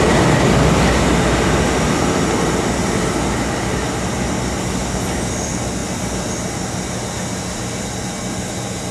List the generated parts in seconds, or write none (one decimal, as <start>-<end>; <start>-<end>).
none